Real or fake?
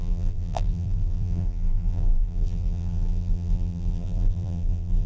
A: fake